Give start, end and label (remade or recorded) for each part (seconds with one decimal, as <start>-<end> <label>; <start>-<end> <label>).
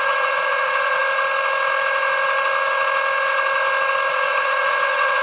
0.0-1.0 remade; 1.0-4.1 recorded; 4.1-5.2 remade